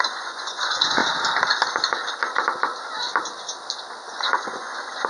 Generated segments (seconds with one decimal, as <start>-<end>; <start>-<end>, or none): 0.0-1.0; 4.1-5.1